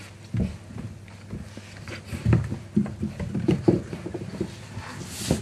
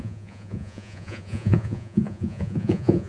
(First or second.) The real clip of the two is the first